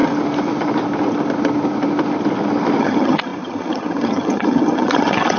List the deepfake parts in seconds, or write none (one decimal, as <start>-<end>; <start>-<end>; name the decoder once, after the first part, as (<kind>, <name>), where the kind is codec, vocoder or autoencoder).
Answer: 2.8-5.4 (vocoder, HiFi-GAN)